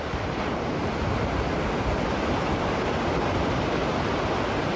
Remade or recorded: recorded